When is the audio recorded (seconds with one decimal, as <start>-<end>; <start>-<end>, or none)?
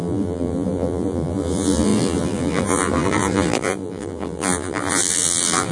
none